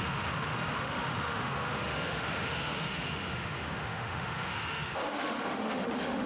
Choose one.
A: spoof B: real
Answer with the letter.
A